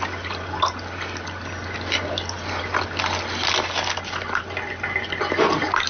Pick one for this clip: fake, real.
real